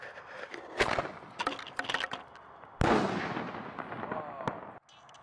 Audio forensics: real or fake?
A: real